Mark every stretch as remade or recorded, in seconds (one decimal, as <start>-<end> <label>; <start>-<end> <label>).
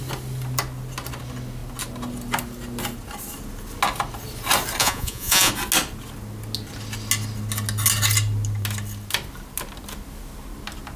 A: 0.0-4.8 recorded; 4.8-5.5 remade; 5.5-11.0 recorded